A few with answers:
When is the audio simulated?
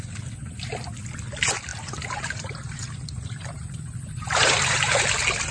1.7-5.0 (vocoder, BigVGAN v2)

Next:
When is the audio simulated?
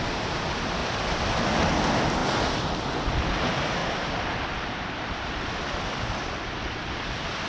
0.8-1.4 (vocoder, BigVGAN v2); 3.8-5.4